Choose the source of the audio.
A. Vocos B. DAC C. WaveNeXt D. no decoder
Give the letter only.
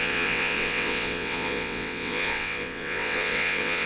C